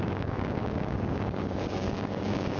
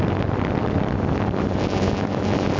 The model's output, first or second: first